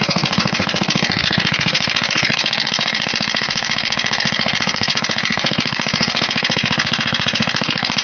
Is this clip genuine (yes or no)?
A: no